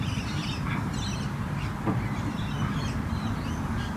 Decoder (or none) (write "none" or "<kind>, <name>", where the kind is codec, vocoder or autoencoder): none